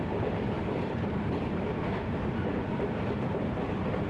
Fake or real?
fake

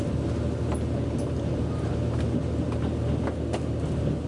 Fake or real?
real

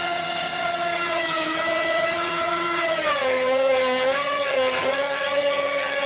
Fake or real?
fake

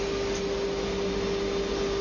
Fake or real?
real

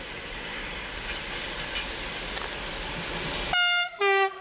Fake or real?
real